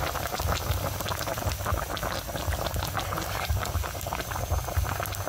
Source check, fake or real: real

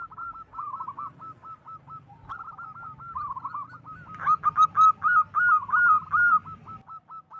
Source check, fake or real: real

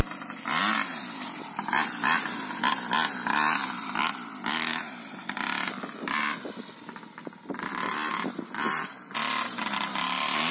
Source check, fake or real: real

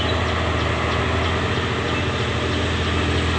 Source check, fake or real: real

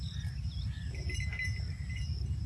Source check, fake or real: fake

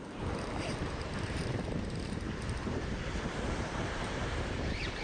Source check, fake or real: fake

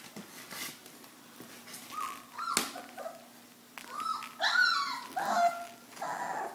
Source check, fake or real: real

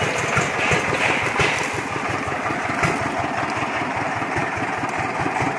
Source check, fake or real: real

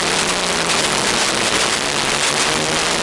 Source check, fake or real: real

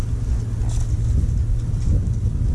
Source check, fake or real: real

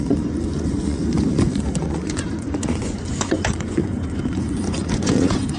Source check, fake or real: fake